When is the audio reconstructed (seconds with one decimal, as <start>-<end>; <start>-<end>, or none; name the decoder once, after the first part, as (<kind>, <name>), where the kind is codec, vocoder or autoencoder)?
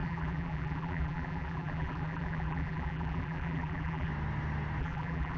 0.0-4.1 (vocoder, BigVGAN v2); 4.8-5.4